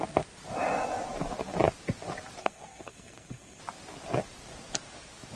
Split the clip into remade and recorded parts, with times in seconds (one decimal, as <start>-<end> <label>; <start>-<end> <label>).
0.0-2.4 recorded; 2.4-3.6 remade; 3.6-5.4 recorded